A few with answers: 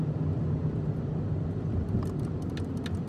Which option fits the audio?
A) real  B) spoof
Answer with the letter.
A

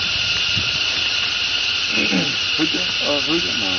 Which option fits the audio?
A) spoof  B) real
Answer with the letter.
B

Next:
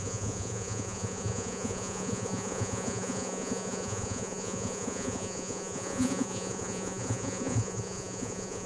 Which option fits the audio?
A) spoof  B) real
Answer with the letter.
A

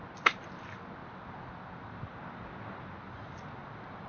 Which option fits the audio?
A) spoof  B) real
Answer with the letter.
B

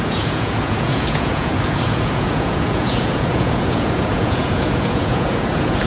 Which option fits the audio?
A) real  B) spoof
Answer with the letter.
B